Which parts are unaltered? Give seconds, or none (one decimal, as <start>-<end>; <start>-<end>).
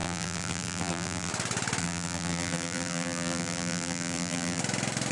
1.3-1.8; 4.6-5.1